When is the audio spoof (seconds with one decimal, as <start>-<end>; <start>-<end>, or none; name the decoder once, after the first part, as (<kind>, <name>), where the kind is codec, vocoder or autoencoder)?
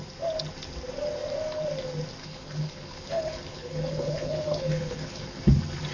2.2-5.4 (codec, HILCodec)